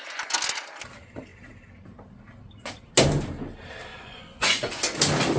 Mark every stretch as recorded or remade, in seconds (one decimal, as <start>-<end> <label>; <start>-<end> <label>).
0.0-3.9 recorded; 3.9-4.8 remade; 4.8-5.4 recorded